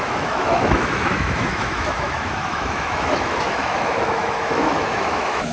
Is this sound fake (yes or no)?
yes